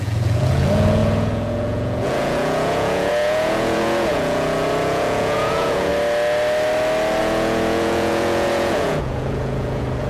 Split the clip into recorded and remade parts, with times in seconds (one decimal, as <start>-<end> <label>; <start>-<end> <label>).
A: 0.0-5.9 remade; 5.9-7.2 recorded; 7.2-10.1 remade